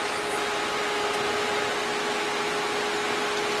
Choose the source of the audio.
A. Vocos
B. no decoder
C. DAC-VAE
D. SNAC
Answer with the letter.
B